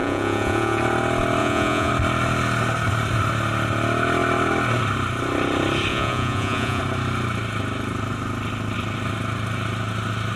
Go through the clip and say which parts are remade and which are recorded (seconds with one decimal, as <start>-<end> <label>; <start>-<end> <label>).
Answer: 0.0-0.8 remade; 0.8-1.4 recorded; 1.4-1.9 remade; 1.9-5.9 recorded; 5.9-6.8 remade; 6.8-10.4 recorded